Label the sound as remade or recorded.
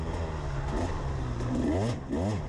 recorded